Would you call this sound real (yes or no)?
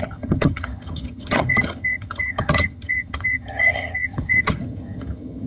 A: no